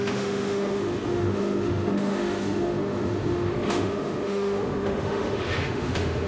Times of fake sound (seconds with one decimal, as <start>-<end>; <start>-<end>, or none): 0.0-6.3